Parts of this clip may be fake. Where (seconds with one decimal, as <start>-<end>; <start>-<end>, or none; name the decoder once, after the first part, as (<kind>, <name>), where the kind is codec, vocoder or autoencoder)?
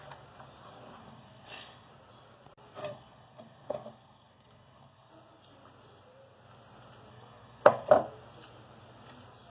1.0-1.9 (codec, SNAC); 2.8-5.1; 7.1-7.9